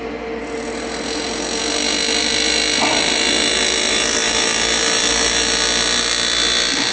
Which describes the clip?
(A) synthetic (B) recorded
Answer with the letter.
B